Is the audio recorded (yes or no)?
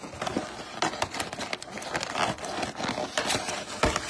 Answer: yes